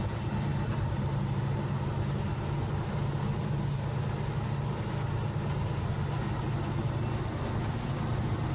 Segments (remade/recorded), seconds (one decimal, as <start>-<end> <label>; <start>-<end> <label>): 0.0-8.5 recorded